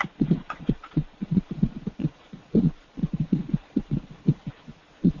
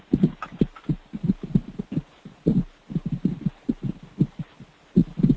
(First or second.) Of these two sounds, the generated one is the first